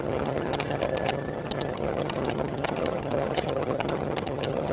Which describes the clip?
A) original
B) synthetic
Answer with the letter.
B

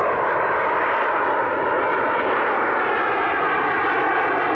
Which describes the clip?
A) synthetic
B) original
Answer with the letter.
B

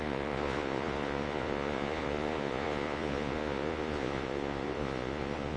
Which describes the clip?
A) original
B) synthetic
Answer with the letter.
B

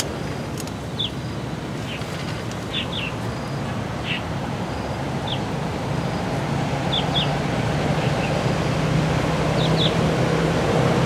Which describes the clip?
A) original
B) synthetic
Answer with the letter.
A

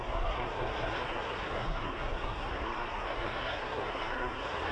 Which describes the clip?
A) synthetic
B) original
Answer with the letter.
A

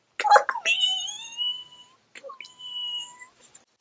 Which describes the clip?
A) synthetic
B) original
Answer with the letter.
B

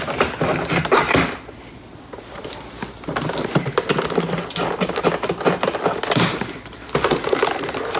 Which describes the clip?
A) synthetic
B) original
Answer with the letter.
B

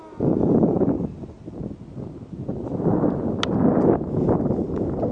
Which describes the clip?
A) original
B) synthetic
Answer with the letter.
A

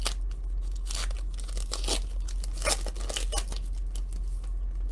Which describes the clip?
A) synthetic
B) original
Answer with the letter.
B